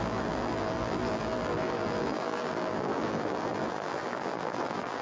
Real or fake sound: fake